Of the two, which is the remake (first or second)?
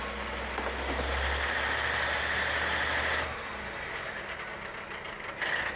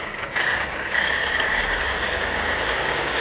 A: second